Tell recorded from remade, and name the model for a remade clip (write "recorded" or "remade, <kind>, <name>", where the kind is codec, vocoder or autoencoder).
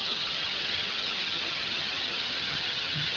remade, vocoder, HiFi-GAN